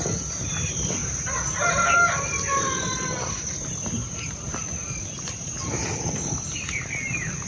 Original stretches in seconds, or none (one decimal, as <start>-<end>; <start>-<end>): 0.0-7.5